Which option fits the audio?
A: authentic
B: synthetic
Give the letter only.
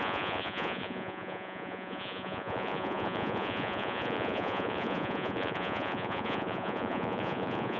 B